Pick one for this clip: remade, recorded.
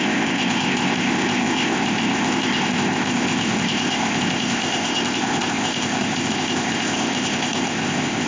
remade